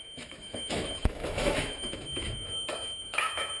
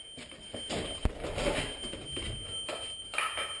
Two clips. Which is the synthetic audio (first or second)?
first